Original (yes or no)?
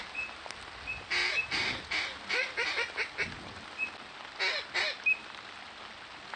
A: yes